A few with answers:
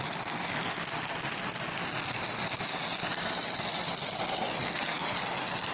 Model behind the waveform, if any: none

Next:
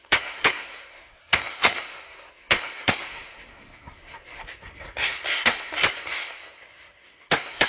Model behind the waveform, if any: codec, SNAC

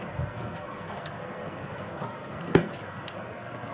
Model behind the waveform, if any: codec, SNAC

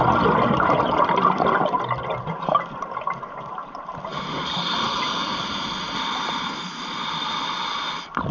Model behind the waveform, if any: none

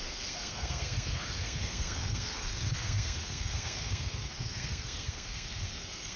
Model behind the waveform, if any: codec, SNAC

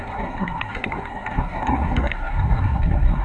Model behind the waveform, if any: codec, SNAC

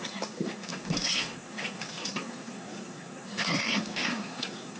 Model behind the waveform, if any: codec, SNAC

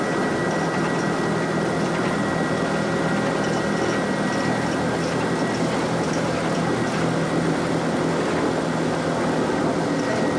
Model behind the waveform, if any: none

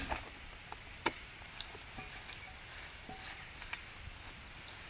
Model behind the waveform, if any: none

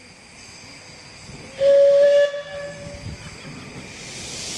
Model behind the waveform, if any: none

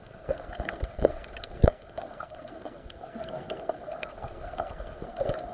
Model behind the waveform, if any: codec, SNAC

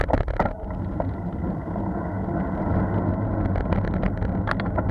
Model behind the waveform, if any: none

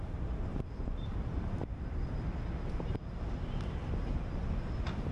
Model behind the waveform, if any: none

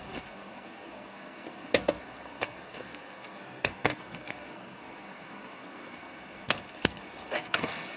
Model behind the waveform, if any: codec, SNAC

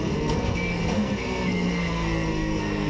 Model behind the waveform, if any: codec, SNAC